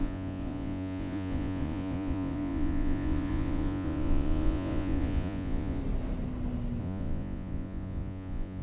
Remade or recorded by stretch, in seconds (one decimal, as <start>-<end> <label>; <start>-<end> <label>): 0.0-5.8 remade; 5.8-6.8 recorded; 6.8-8.6 remade